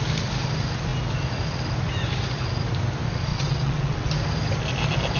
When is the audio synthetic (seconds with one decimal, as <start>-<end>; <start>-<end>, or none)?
3.3-4.1